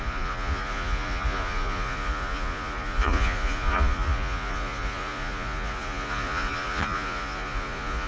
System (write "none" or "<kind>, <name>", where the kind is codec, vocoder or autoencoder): vocoder, Vocos